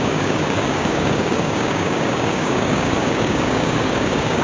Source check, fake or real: fake